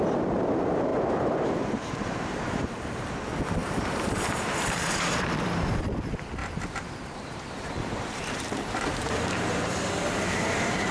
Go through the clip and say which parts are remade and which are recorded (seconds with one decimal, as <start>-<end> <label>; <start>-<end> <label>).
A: 0.0-0.9 recorded; 0.9-2.8 remade; 2.8-3.6 recorded; 3.6-5.8 remade; 5.8-6.4 recorded; 6.4-9.9 remade; 9.9-10.9 recorded